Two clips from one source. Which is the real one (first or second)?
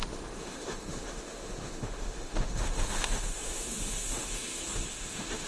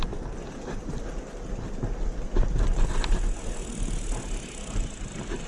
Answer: second